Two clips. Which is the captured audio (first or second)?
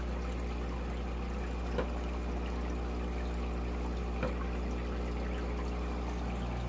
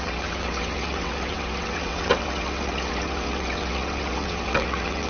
first